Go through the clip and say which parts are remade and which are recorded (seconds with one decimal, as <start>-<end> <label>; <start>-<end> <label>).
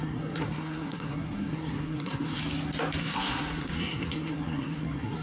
0.0-2.4 remade; 2.4-3.0 recorded; 3.0-5.2 remade